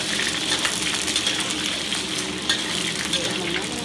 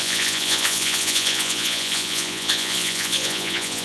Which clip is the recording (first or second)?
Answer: first